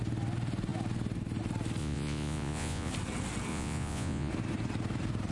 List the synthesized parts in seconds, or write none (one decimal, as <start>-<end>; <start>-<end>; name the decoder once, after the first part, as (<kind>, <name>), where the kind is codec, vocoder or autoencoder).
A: 1.8-2.9 (vocoder, Vocos); 3.5-4.3

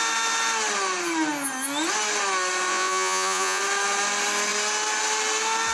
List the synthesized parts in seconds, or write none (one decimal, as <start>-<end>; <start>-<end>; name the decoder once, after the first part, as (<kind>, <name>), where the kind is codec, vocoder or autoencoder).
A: 2.7-3.6 (vocoder, Vocos)